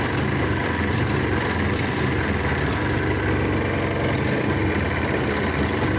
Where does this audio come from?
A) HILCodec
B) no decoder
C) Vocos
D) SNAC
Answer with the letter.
B